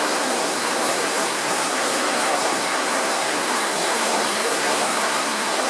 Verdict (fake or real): fake